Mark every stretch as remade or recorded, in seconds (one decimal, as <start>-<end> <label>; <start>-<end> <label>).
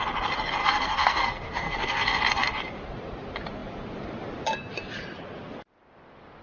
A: 0.0-0.6 recorded; 0.6-2.2 remade; 2.2-6.4 recorded